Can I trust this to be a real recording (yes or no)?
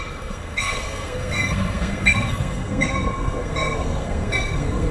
no